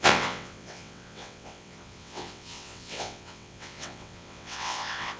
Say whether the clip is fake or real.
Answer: fake